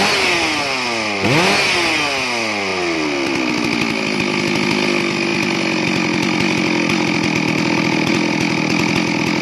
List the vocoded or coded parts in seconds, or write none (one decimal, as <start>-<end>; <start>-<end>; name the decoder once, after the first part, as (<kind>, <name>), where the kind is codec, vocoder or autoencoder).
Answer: none